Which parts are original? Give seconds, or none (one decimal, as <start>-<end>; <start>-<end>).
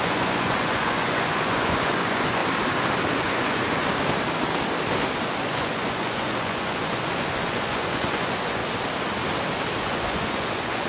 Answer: 2.4-3.1; 3.6-5.4; 8.6-9.8